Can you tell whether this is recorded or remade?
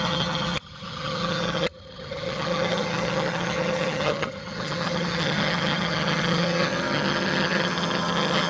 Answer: remade